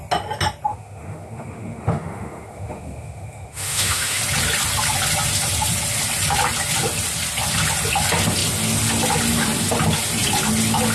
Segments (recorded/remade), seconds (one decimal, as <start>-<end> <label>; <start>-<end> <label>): 0.0-0.7 recorded; 0.7-4.2 remade; 4.2-10.9 recorded